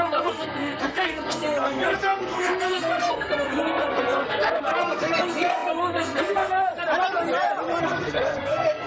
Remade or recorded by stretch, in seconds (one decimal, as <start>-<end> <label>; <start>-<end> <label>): 0.0-6.7 remade; 6.7-7.8 recorded; 7.8-8.9 remade